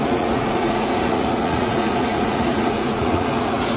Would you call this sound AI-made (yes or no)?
yes